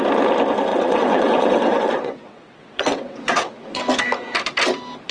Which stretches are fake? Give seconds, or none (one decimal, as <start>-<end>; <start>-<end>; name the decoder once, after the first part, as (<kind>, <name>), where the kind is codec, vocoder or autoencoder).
0.7-3.8 (vocoder, WaveNeXt)